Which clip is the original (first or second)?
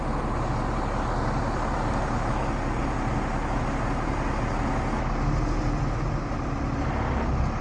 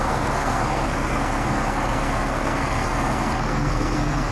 first